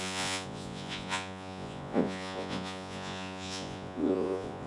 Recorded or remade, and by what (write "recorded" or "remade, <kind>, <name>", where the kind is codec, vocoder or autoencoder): remade, vocoder, Vocos